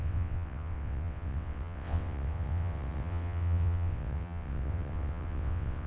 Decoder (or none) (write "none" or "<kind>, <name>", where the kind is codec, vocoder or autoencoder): vocoder, WaveNeXt